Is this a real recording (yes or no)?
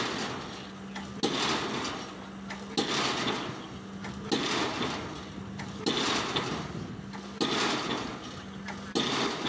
yes